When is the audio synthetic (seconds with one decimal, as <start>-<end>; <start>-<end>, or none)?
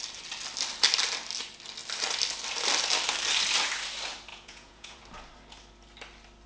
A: 4.3-5.0